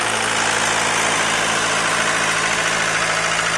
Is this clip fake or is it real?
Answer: real